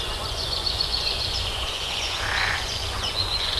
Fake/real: fake